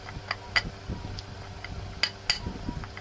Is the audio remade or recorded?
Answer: recorded